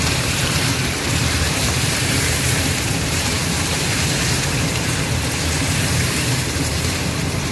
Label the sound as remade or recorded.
remade